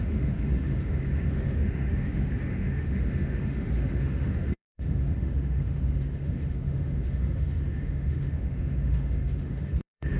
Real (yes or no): no